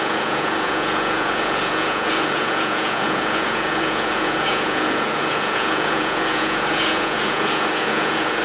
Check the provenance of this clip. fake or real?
fake